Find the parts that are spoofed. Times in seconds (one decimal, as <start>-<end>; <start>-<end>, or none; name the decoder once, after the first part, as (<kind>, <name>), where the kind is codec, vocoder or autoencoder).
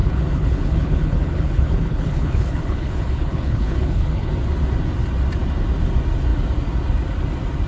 0.0-4.3 (codec, HILCodec)